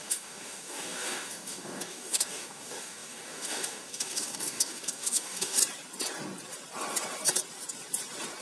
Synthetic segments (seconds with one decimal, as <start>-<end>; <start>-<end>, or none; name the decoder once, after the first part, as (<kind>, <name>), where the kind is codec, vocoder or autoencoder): 0.0-5.6 (codec, DAC)